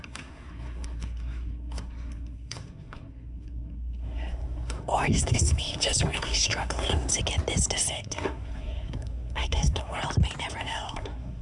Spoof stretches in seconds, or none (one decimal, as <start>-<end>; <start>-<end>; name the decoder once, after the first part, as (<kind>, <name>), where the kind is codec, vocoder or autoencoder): 0.0-7.1 (codec, SNAC); 7.9-10.0; 10.6-11.4